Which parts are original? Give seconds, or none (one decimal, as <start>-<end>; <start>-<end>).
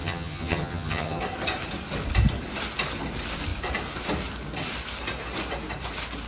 1.2-6.3